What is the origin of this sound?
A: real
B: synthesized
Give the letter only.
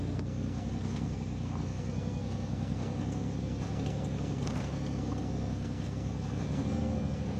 B